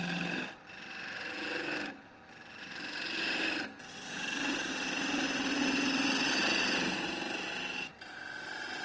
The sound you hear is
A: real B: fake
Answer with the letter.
A